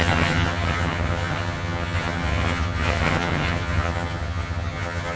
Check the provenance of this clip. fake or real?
fake